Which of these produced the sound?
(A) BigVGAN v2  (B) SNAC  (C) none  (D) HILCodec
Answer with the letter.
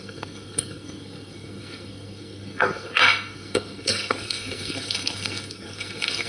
B